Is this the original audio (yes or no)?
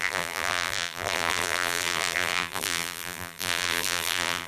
no